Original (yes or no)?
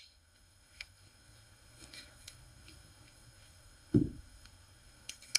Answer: no